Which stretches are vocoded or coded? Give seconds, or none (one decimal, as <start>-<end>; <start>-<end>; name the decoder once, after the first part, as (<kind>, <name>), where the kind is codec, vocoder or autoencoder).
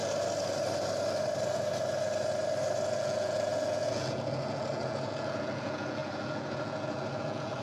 3.0-7.6 (vocoder, Vocos)